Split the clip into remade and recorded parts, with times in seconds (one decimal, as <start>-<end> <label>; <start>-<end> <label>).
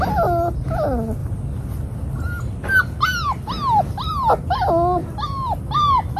0.0-6.2 recorded